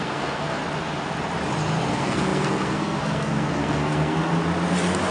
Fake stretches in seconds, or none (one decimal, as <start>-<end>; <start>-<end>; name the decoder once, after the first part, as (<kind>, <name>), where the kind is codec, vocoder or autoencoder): 0.0-0.6 (codec, SNAC); 1.9-4.3

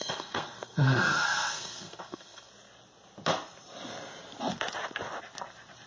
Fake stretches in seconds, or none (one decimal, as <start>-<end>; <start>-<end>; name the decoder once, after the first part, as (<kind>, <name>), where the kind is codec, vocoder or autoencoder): 0.0-2.5 (codec, SNAC)